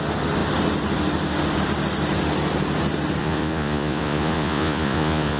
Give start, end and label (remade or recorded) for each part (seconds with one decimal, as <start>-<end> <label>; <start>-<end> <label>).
0.0-3.2 recorded; 3.2-5.4 remade